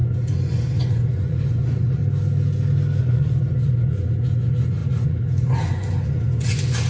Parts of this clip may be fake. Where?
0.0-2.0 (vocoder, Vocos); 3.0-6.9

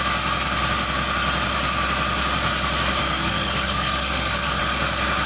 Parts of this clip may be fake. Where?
3.0-4.6 (codec, SNAC)

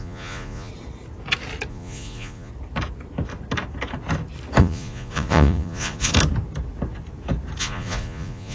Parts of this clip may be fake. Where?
0.0-0.7 (vocoder, Vocos); 1.7-2.5; 4.6-6.1; 7.6-8.5

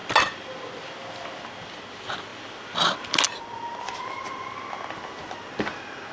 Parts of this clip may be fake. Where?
none

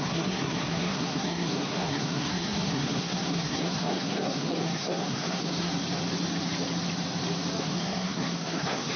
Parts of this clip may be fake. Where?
0.0-5.7 (codec, SNAC); 7.6-9.0

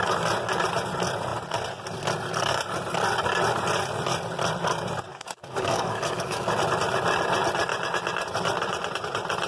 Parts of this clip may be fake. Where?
5.1-6.5 (codec, DAC)

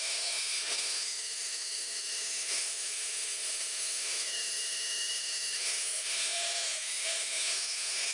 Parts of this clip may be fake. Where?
0.0-8.1 (autoencoder, DAC-VAE)